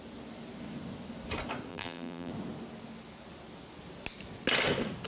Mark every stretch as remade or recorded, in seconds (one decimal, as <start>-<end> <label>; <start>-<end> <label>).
0.0-1.7 recorded; 1.7-2.3 remade; 2.3-5.1 recorded